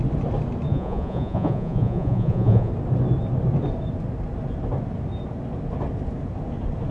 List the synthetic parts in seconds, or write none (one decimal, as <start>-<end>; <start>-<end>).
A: 0.7-2.7